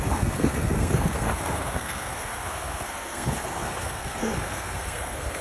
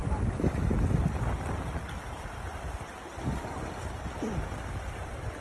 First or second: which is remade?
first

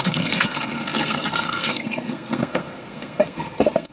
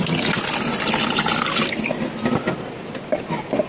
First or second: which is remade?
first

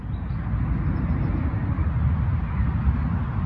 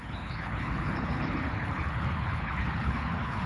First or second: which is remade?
second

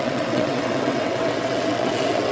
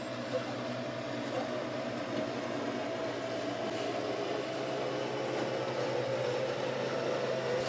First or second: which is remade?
first